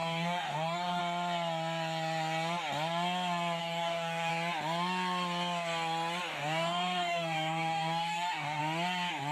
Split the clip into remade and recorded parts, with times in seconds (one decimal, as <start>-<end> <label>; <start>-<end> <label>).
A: 0.0-1.0 remade; 1.0-3.6 recorded; 3.6-4.3 remade; 4.3-6.3 recorded; 6.3-8.6 remade; 8.6-9.3 recorded